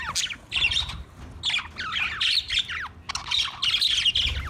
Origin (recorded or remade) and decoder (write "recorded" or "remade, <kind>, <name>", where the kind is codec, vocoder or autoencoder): recorded